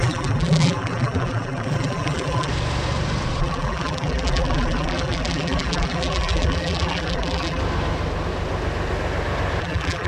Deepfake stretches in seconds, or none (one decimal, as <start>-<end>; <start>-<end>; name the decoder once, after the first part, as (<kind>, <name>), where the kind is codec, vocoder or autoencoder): 0.0-2.5 (vocoder, BigVGAN v2); 3.4-7.6; 9.6-10.1